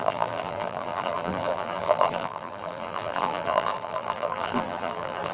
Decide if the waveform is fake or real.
fake